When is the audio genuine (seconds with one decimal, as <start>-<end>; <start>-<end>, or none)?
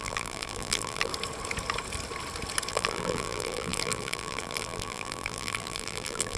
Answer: 1.1-2.7